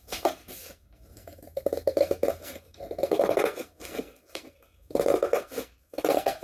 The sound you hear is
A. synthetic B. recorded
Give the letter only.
A